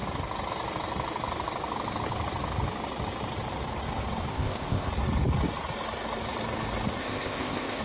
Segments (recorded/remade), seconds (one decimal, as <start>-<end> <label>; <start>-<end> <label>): 0.0-4.3 recorded; 4.3-4.9 remade; 4.9-7.0 recorded; 7.0-7.8 remade